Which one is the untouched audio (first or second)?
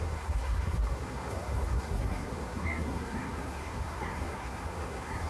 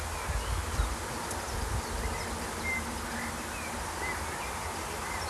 second